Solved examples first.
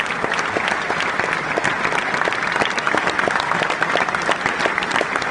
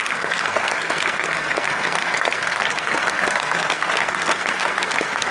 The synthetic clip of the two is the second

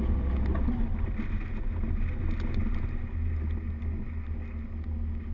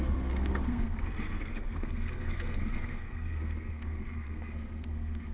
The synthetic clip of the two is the second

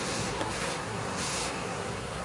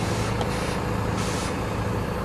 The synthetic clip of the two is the first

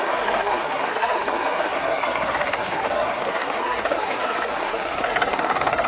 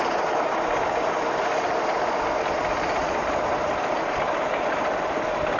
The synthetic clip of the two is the first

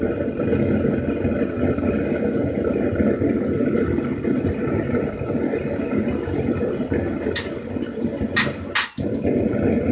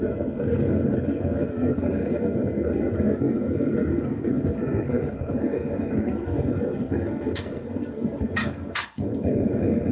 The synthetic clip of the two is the second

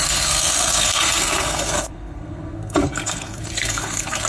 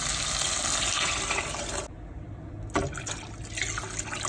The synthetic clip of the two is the first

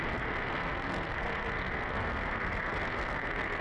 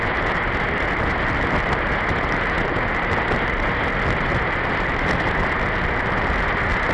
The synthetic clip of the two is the first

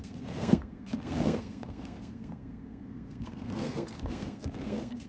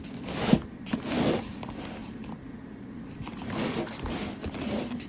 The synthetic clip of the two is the first